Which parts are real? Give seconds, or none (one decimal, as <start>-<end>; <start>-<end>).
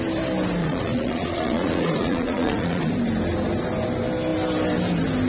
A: 0.0-0.6; 2.9-5.3